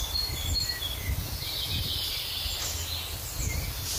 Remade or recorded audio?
recorded